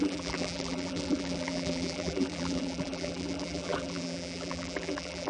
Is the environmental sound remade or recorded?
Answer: remade